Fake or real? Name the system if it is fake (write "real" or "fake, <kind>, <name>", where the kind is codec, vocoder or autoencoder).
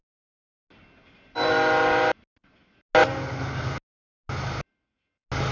real